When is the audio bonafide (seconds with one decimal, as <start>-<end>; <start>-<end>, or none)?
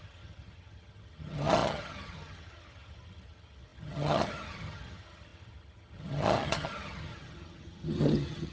none